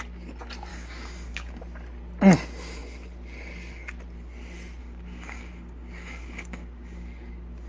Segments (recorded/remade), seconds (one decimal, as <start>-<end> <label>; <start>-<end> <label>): 0.0-0.7 recorded; 0.7-1.6 remade; 1.6-4.8 recorded; 4.8-7.3 remade; 7.3-7.7 recorded